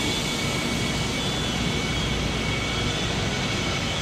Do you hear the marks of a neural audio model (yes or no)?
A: no